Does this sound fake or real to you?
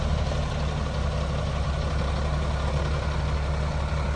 real